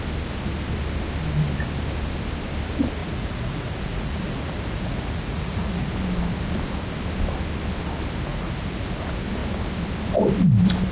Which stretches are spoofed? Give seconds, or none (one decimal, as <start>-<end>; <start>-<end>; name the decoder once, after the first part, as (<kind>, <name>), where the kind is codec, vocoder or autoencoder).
3.0-5.9 (vocoder, Vocos); 8.3-9.0